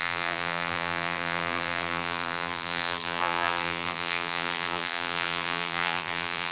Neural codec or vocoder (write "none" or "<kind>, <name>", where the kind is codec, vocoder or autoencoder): vocoder, BigVGAN v2